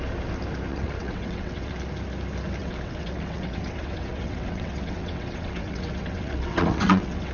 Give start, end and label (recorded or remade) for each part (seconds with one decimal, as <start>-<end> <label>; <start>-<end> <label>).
0.0-0.7 recorded; 0.7-1.7 remade; 1.7-2.6 recorded; 2.6-7.3 remade